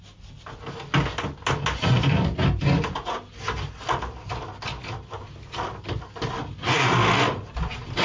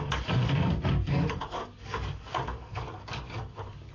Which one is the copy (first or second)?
second